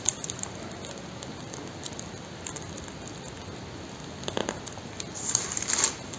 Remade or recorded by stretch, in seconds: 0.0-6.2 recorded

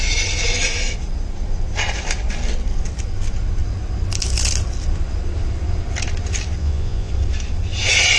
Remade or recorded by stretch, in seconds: 0.0-6.6 recorded; 6.6-7.1 remade; 7.1-8.2 recorded

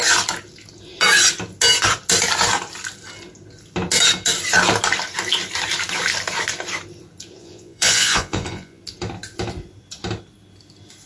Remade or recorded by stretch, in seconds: 0.0-7.4 recorded; 7.4-8.8 remade; 8.8-11.1 recorded

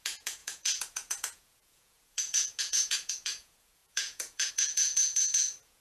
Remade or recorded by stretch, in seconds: 0.0-5.8 remade

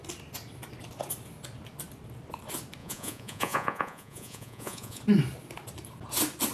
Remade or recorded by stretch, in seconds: 0.0-2.8 recorded; 2.8-5.0 remade; 5.0-6.5 recorded

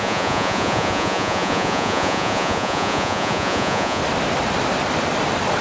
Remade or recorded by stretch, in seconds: 0.0-4.0 remade; 4.0-5.6 recorded

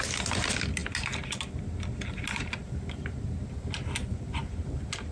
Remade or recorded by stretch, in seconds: 0.0-4.1 recorded; 4.1-4.6 remade; 4.6-5.1 recorded

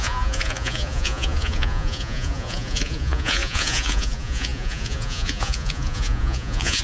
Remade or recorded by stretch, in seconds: 0.0-6.8 remade